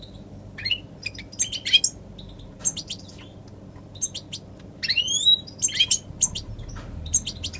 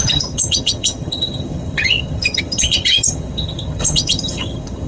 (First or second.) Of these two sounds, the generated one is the second